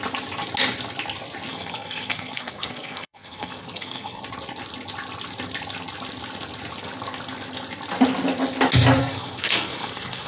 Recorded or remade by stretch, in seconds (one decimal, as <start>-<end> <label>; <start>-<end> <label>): 0.0-1.5 recorded; 1.5-4.2 remade; 4.2-9.0 recorded; 9.0-10.3 remade